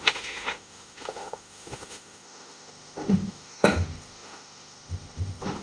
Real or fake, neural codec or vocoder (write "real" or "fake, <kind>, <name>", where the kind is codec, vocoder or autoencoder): fake, autoencoder, DAC-VAE